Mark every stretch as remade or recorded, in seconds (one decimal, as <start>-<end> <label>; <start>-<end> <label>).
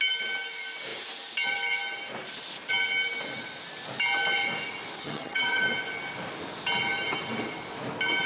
0.0-5.0 recorded; 5.0-5.6 remade; 5.6-8.3 recorded